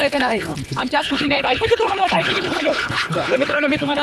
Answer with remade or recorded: remade